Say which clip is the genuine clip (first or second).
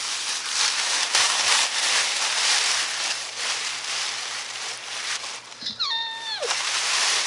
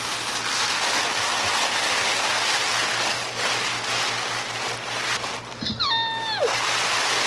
second